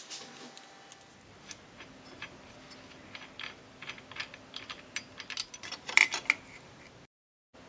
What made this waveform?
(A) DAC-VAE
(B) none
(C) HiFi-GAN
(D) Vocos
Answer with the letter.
B